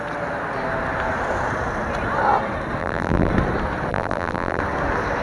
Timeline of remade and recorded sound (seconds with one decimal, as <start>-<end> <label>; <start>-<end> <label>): 0.0-2.8 recorded; 2.8-3.3 remade; 3.3-3.9 recorded; 3.9-4.6 remade; 4.6-5.2 recorded